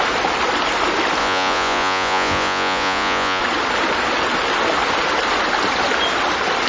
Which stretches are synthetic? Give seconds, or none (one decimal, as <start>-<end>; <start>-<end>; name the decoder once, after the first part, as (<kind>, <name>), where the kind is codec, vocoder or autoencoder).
1.2-3.4 (vocoder, Vocos)